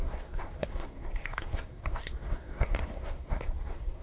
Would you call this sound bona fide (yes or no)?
no